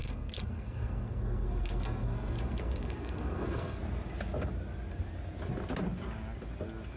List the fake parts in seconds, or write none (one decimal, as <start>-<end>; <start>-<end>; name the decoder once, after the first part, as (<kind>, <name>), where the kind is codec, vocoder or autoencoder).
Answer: 0.0-3.8 (codec, SNAC)